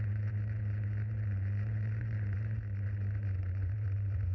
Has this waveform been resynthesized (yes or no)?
yes